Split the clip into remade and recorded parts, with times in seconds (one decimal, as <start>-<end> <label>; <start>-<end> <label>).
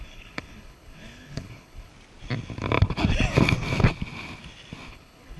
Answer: 0.0-1.9 remade; 1.9-4.9 recorded; 4.9-5.4 remade